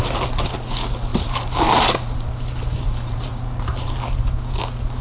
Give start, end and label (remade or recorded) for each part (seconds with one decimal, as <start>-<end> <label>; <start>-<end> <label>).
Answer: 0.0-1.1 recorded; 1.1-4.0 remade; 4.0-5.0 recorded